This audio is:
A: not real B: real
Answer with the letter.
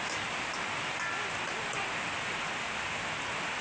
B